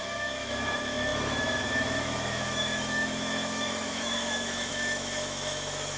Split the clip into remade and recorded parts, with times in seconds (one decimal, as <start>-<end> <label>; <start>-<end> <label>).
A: 0.0-6.0 remade